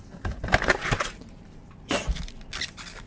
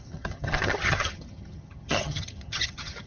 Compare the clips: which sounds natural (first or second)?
first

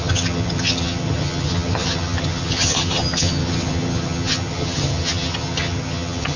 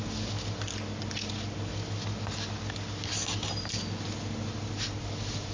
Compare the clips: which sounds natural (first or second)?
second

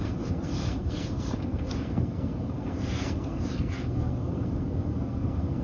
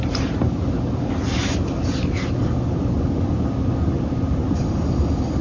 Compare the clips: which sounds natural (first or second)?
second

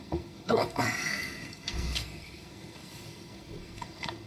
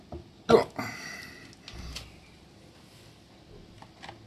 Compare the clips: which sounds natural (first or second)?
second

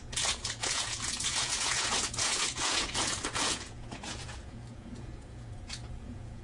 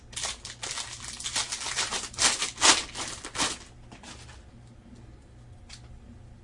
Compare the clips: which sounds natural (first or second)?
second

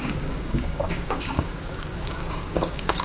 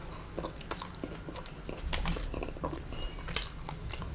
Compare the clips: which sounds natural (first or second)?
second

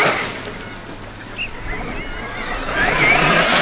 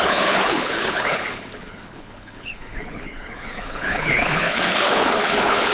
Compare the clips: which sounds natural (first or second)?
first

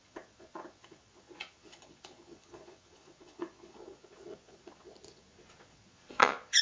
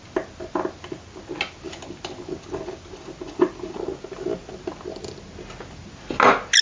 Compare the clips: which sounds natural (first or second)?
second